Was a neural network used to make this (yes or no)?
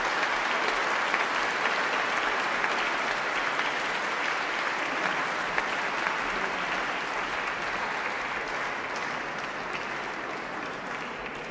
no